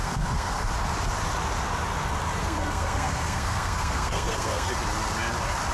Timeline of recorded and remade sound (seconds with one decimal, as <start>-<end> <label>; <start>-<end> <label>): 0.0-0.5 remade; 0.5-2.4 recorded; 2.4-4.7 remade; 4.7-5.7 recorded